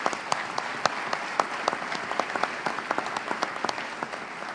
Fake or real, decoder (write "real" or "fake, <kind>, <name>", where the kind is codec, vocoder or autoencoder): real